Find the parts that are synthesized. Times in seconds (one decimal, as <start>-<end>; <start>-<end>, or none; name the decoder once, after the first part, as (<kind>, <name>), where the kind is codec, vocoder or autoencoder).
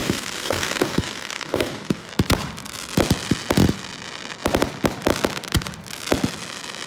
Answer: 0.0-2.1 (codec, DAC)